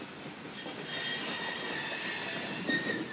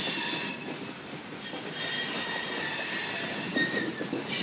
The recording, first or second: first